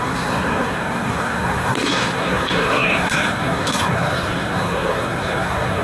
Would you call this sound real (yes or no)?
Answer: no